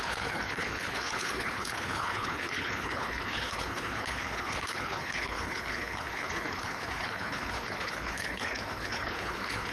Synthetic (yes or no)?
yes